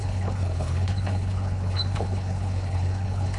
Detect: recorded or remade remade